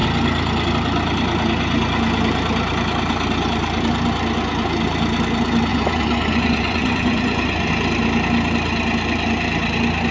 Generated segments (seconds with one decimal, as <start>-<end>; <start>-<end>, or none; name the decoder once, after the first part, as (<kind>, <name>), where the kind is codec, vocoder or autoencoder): 5.7-7.7 (vocoder, Vocos)